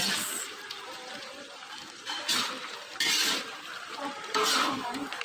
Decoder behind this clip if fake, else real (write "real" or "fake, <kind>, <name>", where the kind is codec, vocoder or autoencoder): fake, vocoder, BigVGAN v2